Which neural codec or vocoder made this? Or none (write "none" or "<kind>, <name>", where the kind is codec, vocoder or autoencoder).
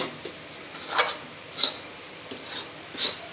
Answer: none